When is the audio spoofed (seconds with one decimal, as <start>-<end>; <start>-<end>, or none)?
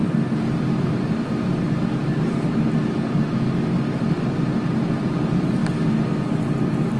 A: none